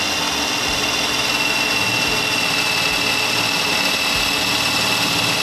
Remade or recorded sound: recorded